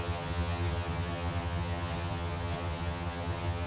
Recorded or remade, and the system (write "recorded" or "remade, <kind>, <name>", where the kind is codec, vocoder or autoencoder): remade, vocoder, HiFi-GAN